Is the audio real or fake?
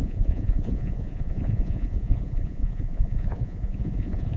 fake